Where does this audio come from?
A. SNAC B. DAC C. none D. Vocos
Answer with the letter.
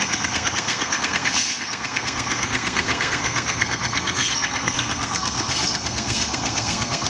A